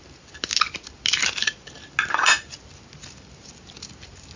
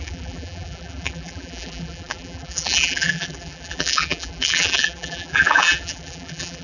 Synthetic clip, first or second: second